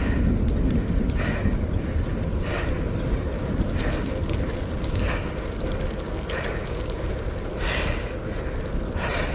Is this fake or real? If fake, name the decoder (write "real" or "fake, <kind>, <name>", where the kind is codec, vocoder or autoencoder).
real